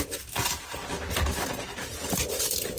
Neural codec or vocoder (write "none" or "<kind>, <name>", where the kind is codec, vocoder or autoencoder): none